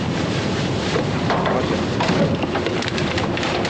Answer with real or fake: fake